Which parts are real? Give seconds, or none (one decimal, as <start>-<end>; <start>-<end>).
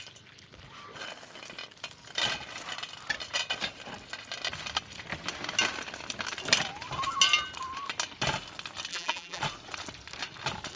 0.0-8.9; 9.4-10.8